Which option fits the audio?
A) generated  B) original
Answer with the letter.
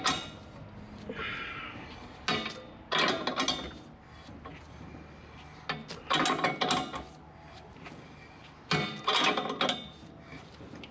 B